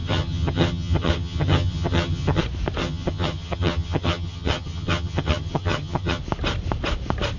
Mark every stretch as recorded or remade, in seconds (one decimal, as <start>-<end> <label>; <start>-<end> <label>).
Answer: 0.0-2.4 remade; 2.4-2.8 recorded; 2.8-6.2 remade; 6.2-7.4 recorded